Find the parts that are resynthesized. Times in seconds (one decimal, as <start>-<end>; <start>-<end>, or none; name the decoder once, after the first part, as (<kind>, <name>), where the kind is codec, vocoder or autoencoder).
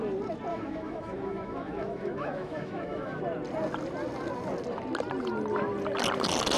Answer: 0.5-3.2 (autoencoder, DAC-VAE)